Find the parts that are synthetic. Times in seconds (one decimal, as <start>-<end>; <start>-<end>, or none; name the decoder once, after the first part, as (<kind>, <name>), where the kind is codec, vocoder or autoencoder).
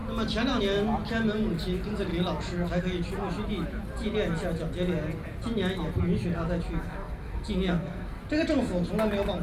6.8-8.2 (codec, SNAC)